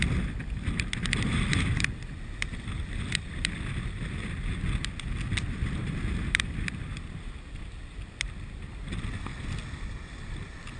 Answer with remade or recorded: recorded